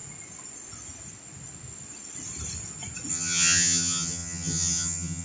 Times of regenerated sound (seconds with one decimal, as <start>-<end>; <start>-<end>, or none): 3.1-5.2